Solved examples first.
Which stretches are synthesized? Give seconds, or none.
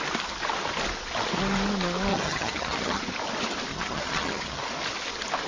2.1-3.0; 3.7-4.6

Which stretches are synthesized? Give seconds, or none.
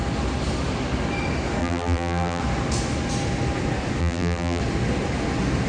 1.6-2.4; 4.0-4.6